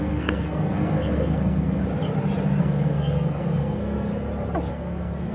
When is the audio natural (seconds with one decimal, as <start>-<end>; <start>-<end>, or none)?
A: 1.8-2.6; 4.1-4.7